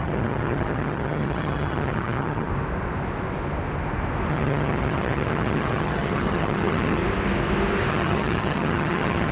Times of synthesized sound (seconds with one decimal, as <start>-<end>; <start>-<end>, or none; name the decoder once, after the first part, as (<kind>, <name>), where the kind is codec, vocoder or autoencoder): 0.0-2.5 (vocoder, HiFi-GAN); 4.3-7.0; 7.9-9.3